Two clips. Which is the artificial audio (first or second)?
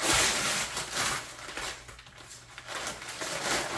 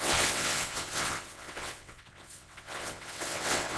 second